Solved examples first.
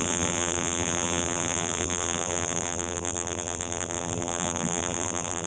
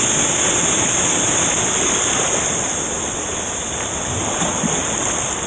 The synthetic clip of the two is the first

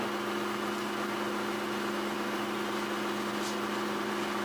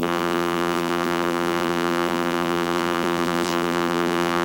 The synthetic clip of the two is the second